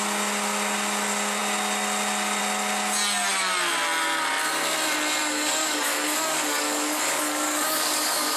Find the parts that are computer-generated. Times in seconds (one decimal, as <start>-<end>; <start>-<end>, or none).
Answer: 5.2-8.4

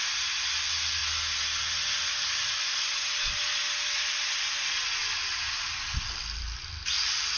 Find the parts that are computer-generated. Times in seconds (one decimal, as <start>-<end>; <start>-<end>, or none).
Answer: none